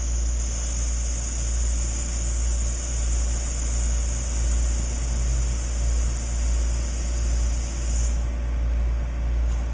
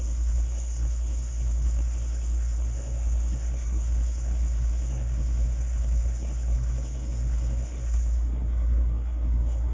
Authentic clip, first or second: first